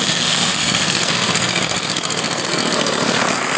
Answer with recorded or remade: remade